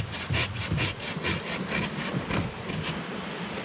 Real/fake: real